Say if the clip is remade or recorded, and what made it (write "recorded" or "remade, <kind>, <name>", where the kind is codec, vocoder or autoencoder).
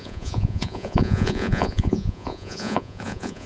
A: remade, vocoder, Vocos